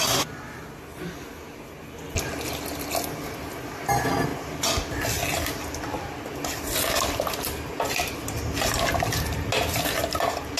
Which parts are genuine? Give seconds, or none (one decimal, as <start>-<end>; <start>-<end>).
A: 0.0-10.6